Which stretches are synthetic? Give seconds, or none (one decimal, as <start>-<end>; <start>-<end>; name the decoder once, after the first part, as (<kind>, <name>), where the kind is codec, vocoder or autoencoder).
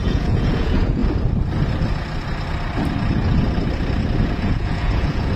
0.0-1.0 (vocoder, Vocos); 4.2-5.4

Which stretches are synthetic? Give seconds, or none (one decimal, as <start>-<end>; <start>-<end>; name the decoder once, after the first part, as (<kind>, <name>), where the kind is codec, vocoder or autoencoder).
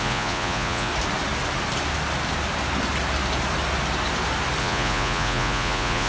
0.0-0.9 (vocoder, Vocos); 4.6-6.1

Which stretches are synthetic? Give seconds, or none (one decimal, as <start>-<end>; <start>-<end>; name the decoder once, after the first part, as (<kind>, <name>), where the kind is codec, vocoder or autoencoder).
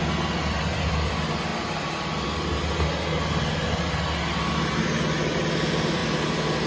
none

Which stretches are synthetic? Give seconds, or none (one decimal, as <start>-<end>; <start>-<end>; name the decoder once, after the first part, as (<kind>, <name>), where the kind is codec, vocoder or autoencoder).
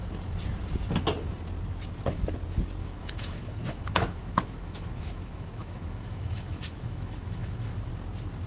2.8-7.8 (autoencoder, DAC-VAE)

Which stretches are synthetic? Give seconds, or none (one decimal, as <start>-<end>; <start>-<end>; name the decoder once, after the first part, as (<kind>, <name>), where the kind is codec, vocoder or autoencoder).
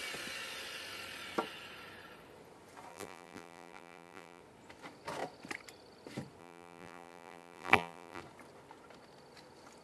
2.9-4.4 (vocoder, BigVGAN v2); 6.4-8.2